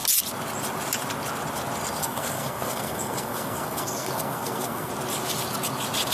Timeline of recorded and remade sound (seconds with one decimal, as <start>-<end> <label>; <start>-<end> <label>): 0.0-2.0 recorded; 2.0-4.9 remade; 4.9-6.1 recorded